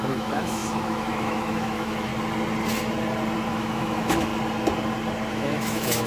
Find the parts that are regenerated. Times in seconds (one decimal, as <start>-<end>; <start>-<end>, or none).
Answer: 0.0-2.1; 3.5-4.3; 5.3-6.1